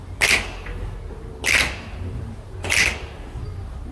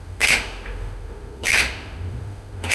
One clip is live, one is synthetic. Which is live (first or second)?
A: first